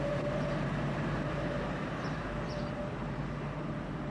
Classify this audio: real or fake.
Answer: fake